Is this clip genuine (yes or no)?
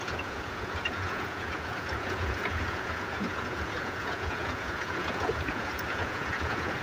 no